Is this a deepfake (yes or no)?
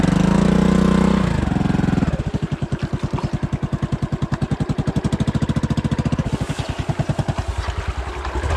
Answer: no